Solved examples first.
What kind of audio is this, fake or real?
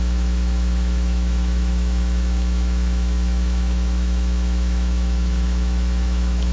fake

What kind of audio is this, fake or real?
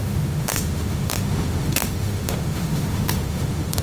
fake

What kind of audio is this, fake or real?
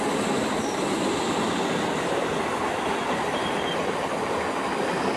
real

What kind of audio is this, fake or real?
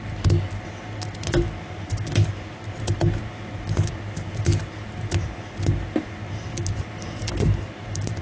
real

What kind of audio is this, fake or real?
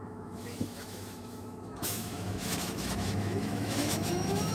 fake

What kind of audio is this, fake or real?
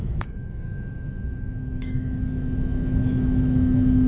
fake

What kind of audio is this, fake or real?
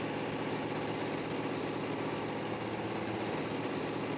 real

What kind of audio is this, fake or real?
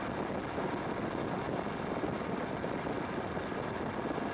real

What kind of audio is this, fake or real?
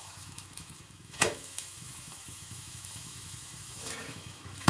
fake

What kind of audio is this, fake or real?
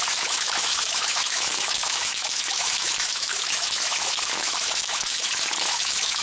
fake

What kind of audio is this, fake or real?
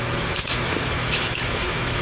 fake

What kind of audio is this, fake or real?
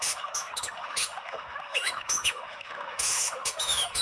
fake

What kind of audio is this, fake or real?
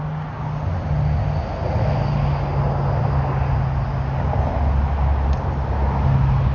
real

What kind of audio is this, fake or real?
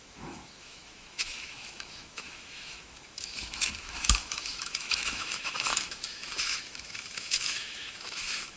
fake